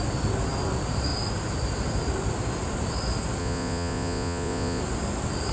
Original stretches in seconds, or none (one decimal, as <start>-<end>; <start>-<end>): 0.0-3.4; 4.8-5.5